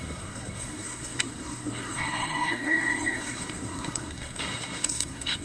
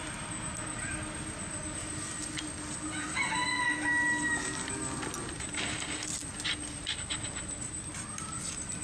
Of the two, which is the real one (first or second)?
second